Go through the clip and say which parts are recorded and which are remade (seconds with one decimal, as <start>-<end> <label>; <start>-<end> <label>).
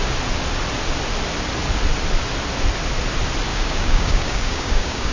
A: 0.0-3.5 recorded; 3.5-5.1 remade